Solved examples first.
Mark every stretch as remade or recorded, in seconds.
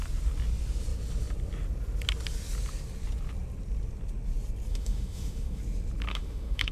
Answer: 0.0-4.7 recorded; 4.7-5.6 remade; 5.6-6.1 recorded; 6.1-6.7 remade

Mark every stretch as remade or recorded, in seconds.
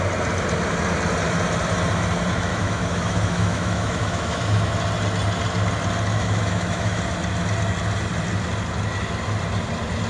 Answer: 0.0-2.5 recorded; 2.5-4.7 remade; 4.7-6.1 recorded; 6.1-7.0 remade; 7.0-10.1 recorded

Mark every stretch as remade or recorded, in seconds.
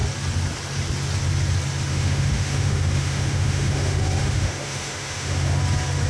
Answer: 0.0-1.9 recorded; 1.9-5.6 remade; 5.6-6.1 recorded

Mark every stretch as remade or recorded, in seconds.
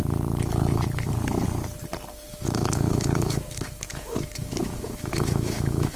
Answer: 0.0-2.3 recorded; 2.3-6.0 remade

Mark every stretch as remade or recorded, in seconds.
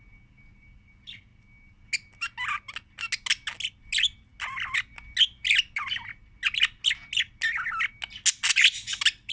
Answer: 0.0-9.3 recorded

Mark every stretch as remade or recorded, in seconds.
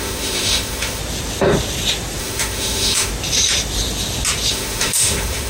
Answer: 0.0-1.0 remade; 1.0-2.2 recorded; 2.2-3.1 remade; 3.1-4.5 recorded; 4.5-5.5 remade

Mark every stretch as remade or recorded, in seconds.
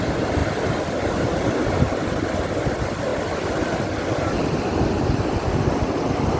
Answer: 0.0-6.4 recorded